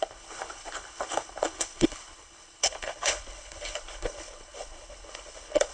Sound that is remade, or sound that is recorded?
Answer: remade